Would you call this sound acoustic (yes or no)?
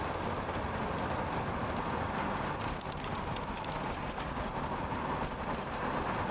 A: yes